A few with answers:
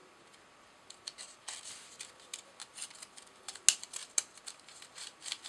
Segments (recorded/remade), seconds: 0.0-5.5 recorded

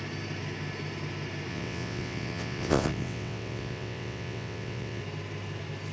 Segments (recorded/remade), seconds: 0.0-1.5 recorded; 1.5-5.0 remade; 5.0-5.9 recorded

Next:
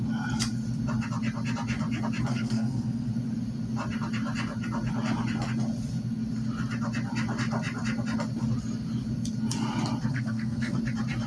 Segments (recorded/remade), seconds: 0.0-2.3 recorded; 2.3-3.1 remade; 3.1-10.1 recorded; 10.1-10.8 remade; 10.8-11.3 recorded